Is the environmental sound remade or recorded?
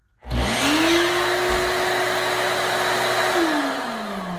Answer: recorded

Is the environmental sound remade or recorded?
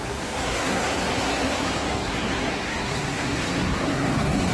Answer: remade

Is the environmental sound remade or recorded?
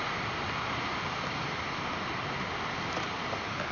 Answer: recorded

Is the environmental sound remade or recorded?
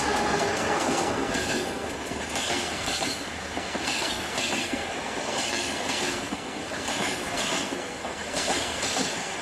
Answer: remade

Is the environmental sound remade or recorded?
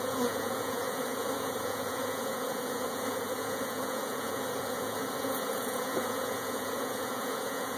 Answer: remade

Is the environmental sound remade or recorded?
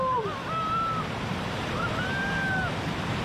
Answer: recorded